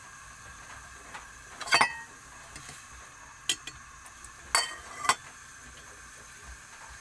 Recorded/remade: recorded